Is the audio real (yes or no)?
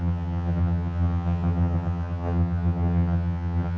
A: no